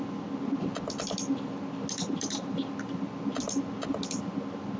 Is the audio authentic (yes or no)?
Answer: yes